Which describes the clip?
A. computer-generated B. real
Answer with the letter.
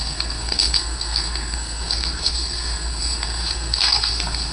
A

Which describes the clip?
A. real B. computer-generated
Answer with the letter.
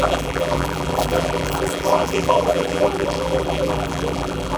B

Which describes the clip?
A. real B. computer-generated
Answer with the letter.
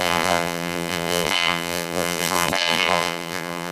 B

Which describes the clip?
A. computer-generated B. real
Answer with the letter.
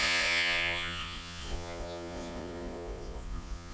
A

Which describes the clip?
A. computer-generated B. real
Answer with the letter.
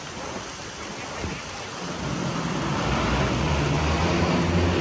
B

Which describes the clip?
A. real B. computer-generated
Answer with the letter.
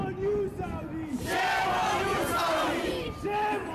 A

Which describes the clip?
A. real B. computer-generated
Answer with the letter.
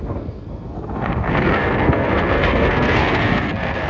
B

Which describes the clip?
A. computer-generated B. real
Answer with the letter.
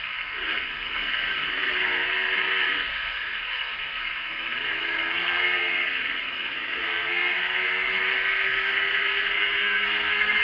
A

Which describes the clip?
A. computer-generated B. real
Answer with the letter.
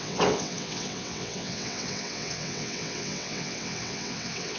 A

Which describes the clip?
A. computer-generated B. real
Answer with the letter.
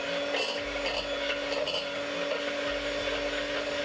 B